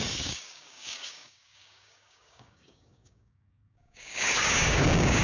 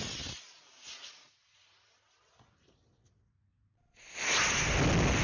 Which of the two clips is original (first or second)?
second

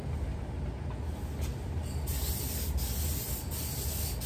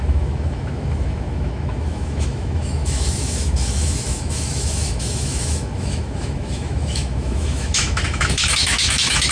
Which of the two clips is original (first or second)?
first